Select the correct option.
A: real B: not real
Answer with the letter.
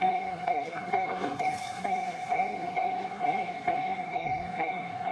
B